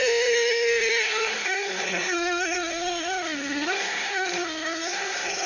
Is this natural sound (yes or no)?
no